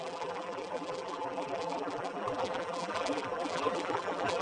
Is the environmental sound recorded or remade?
remade